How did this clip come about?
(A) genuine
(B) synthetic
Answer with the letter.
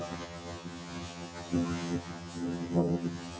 B